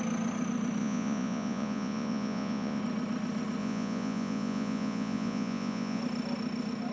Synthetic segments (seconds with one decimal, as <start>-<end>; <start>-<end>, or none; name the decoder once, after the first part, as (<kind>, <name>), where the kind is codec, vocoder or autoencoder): 0.8-2.8 (vocoder, Vocos); 3.6-6.0